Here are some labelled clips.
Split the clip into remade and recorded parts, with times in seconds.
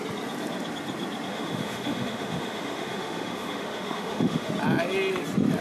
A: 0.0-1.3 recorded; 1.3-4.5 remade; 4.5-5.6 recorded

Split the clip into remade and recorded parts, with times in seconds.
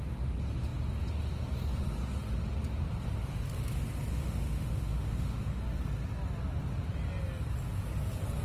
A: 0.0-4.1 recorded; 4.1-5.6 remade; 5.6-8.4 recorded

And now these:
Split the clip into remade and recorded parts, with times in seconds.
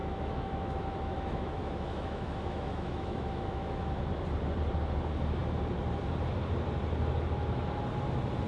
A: 0.0-4.0 remade; 4.0-8.5 recorded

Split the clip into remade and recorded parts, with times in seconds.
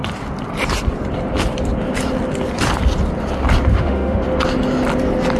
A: 0.0-3.7 recorded; 3.7-4.2 remade; 4.2-5.4 recorded